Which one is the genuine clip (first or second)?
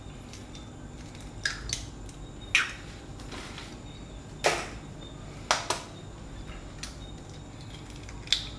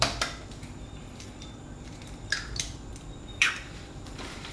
first